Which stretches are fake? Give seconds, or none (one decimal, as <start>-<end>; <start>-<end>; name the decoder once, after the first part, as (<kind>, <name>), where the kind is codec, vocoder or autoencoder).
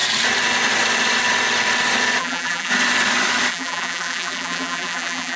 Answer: 2.2-2.7 (vocoder, BigVGAN v2); 3.5-5.4